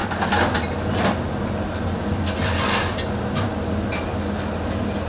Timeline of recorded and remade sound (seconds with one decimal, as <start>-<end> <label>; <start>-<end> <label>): 0.0-5.1 recorded